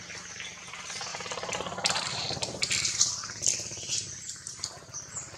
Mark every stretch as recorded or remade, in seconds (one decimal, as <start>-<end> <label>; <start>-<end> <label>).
0.0-1.1 recorded; 1.1-2.6 remade; 2.6-5.4 recorded

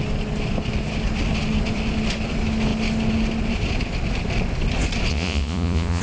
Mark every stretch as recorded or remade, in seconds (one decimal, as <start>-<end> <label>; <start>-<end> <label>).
0.0-5.1 recorded; 5.1-6.0 remade

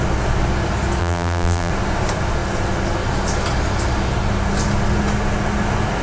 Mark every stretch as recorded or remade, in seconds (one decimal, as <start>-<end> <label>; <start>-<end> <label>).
0.0-1.0 recorded; 1.0-1.7 remade; 1.7-6.0 recorded